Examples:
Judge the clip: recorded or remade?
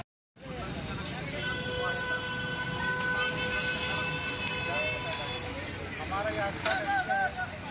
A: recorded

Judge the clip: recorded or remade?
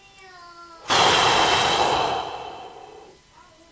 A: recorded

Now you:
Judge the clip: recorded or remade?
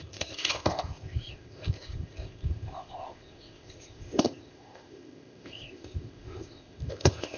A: remade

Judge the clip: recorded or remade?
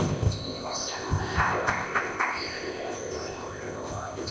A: remade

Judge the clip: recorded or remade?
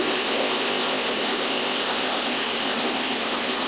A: remade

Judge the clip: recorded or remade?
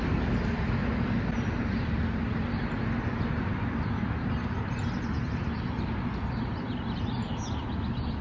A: recorded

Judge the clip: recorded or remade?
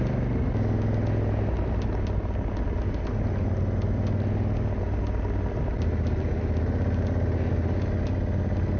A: recorded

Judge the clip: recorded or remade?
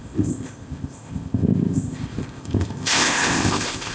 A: remade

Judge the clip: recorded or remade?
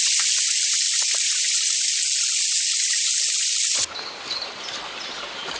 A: recorded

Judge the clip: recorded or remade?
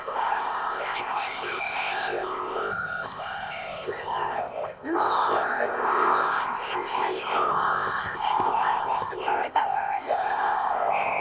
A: remade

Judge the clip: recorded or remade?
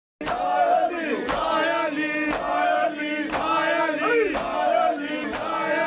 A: recorded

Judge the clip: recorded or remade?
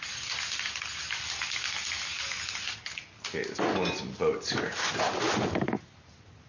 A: recorded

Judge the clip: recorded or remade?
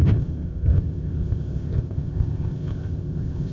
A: remade